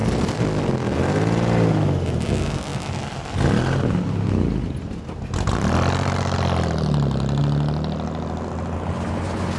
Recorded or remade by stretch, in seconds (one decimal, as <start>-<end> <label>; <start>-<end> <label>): 0.0-9.6 recorded